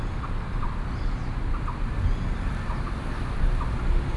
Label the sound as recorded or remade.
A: recorded